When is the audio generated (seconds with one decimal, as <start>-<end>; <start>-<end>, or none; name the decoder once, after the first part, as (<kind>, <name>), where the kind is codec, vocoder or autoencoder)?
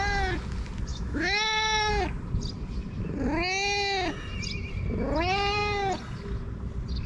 0.9-1.9 (autoencoder, DAC-VAE)